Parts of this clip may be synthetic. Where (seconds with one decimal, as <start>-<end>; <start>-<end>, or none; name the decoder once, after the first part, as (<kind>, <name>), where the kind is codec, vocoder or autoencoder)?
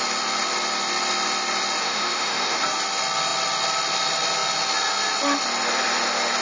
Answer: 1.8-2.6 (autoencoder, DAC-VAE)